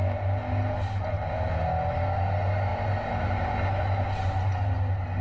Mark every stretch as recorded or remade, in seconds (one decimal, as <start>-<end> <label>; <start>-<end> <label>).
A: 0.0-5.2 recorded